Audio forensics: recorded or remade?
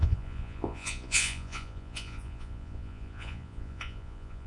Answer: remade